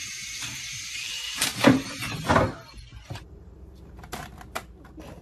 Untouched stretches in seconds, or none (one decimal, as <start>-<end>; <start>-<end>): 2.3-2.9; 4.1-5.2